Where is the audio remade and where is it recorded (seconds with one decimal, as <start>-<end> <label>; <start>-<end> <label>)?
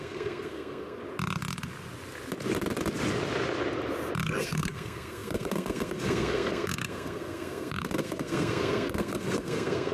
0.0-1.0 remade; 1.0-4.2 recorded; 4.2-9.9 remade